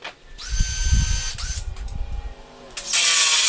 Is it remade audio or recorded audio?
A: recorded